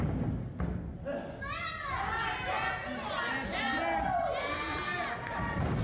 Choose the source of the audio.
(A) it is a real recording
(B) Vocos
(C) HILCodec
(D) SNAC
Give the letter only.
A